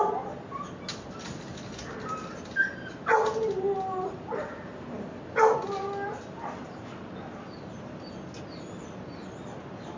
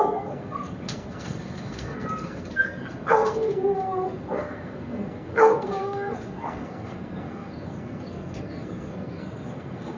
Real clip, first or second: first